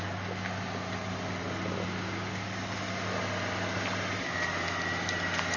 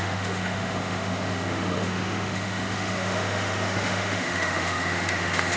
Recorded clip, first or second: first